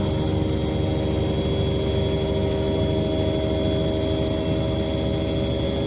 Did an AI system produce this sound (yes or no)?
no